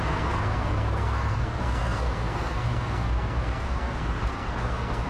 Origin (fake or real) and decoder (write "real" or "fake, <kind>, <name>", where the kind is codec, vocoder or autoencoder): fake, codec, SNAC